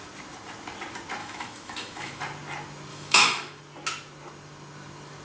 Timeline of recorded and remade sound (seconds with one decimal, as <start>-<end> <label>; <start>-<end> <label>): 0.0-1.2 recorded; 1.2-2.2 remade; 2.2-2.9 recorded; 2.9-3.6 remade; 3.6-5.2 recorded